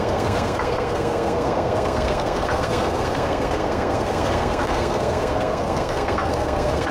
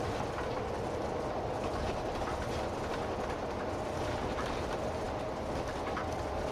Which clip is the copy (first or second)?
first